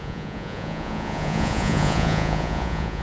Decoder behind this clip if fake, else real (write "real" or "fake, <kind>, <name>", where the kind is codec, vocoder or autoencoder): fake, vocoder, Vocos